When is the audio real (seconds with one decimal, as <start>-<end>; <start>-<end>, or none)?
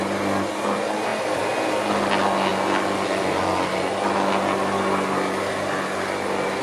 0.0-6.6